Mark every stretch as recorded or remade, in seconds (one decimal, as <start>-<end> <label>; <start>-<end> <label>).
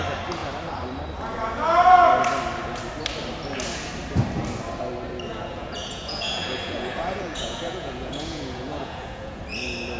0.0-5.3 recorded; 5.3-9.4 remade; 9.4-10.0 recorded